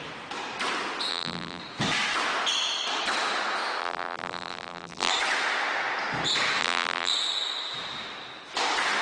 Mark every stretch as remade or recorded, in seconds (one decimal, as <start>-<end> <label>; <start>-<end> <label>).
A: 0.0-1.1 recorded; 1.1-1.6 remade; 1.6-3.8 recorded; 3.8-5.1 remade; 5.1-6.6 recorded; 6.6-7.1 remade; 7.1-9.0 recorded